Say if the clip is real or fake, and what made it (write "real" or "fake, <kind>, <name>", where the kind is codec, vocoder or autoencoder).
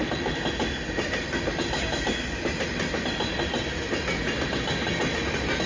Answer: real